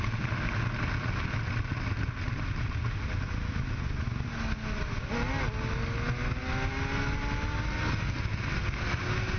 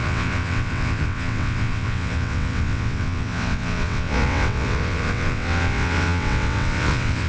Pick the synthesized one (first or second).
second